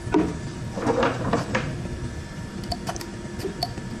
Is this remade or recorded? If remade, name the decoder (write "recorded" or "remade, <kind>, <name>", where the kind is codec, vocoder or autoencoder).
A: remade, vocoder, BigVGAN v2